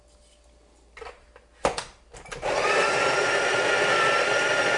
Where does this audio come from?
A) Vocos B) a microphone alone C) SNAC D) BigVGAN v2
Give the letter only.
B